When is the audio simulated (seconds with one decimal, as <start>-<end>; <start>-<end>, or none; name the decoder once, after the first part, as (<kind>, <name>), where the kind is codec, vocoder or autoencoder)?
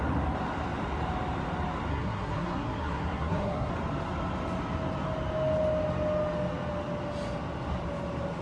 1.9-3.7 (codec, SNAC)